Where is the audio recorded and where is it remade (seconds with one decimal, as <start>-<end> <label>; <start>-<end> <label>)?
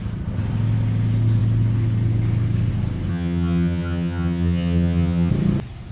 0.0-3.1 recorded; 3.1-5.3 remade; 5.3-5.9 recorded